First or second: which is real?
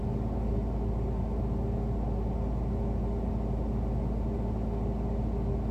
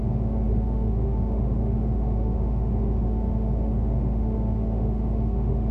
first